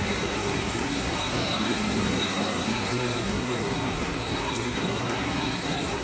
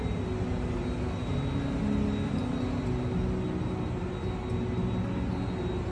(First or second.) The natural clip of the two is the second